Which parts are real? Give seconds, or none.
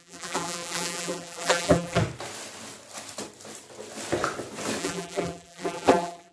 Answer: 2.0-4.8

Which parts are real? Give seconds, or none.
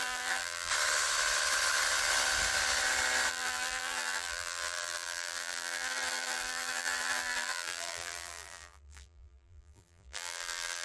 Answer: 0.7-3.3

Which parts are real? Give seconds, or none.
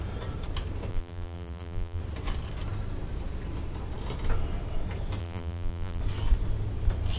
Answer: 0.0-0.9; 2.0-5.2; 6.0-7.2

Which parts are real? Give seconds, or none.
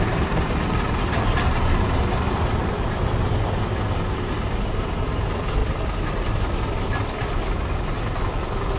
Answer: 0.0-8.8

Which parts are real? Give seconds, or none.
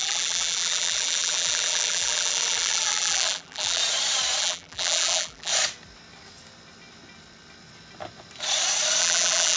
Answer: 3.8-4.4; 5.5-9.0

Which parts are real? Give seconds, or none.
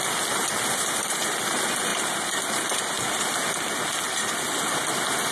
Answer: 0.0-5.3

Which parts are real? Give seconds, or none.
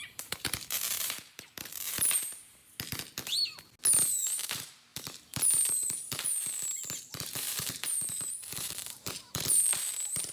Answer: 2.6-4.4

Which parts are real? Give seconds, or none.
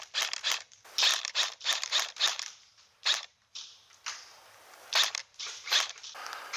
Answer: 0.0-1.1; 1.9-2.3; 3.7-5.2; 6.0-6.6